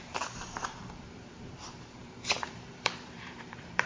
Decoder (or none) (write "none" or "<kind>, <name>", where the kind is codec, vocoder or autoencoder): vocoder, BigVGAN v2